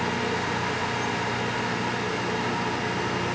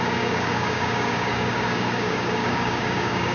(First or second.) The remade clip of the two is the second